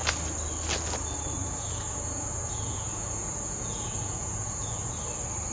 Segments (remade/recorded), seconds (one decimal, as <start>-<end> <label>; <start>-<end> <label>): 0.0-1.4 recorded; 1.4-4.7 remade; 4.7-5.5 recorded